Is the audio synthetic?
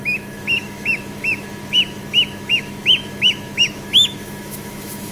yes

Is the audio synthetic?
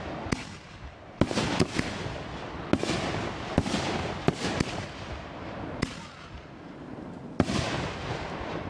no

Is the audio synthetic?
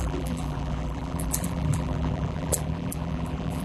yes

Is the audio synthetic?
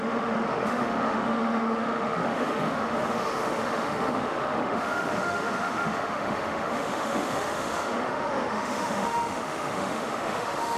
yes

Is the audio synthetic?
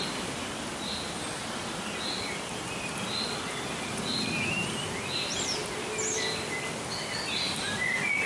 no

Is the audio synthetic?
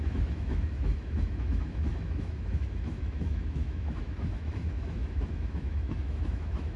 yes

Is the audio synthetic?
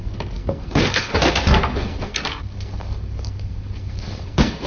yes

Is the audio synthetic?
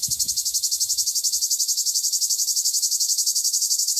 yes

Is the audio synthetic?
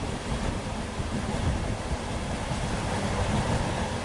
no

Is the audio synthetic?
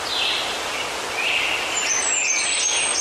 no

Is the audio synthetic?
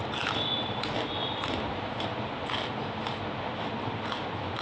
no